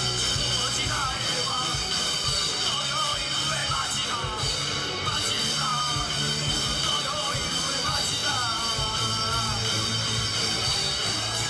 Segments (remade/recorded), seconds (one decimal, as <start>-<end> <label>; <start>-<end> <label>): 0.0-3.6 remade; 3.6-4.5 recorded; 4.5-11.5 remade

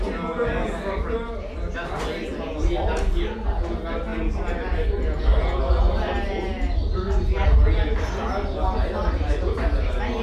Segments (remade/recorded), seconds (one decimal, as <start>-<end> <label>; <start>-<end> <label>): 0.0-10.2 recorded